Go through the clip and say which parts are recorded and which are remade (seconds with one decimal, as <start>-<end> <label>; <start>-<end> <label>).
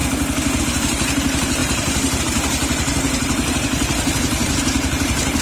0.0-0.6 recorded; 0.6-5.4 remade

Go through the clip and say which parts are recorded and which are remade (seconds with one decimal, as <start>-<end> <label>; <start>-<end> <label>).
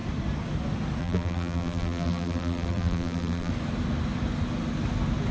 0.0-1.0 recorded; 1.0-3.5 remade; 3.5-5.3 recorded